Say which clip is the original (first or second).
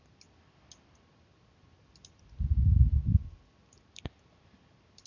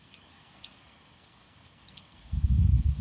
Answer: first